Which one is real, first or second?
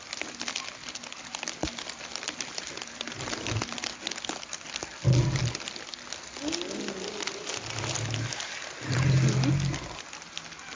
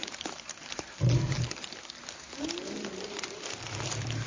first